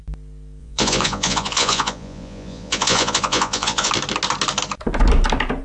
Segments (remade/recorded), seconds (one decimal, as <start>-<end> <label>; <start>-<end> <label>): 0.0-0.6 recorded; 0.6-3.9 remade; 3.9-5.6 recorded